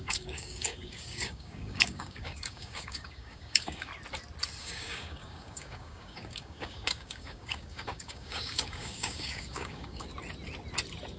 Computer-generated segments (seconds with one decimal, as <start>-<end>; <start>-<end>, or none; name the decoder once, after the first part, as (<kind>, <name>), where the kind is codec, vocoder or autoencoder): 0.0-3.9 (codec, DAC); 4.6-10.1